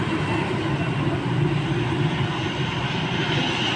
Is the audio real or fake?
real